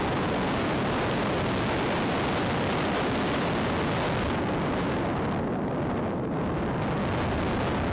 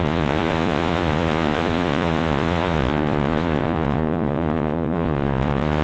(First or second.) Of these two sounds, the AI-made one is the second